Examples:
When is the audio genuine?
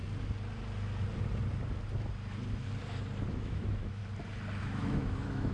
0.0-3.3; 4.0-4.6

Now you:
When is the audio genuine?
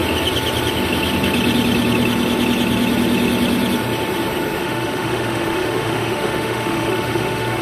0.0-4.6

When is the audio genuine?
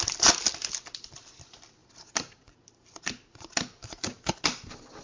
0.0-3.8; 4.4-5.0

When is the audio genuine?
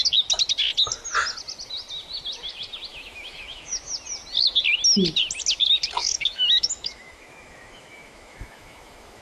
0.0-2.9; 3.9-6.0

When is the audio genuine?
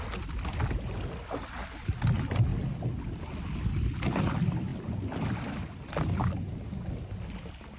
0.0-7.8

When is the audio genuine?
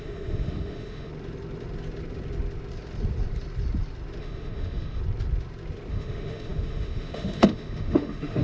1.1-4.2; 5.0-5.9